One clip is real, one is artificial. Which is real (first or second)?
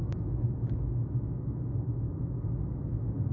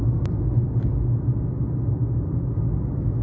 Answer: second